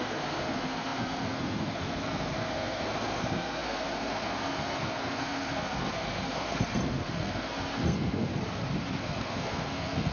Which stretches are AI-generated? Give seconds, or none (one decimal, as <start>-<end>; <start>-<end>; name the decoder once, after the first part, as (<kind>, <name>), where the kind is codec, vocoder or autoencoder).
0.0-8.3 (codec, SNAC); 9.0-10.1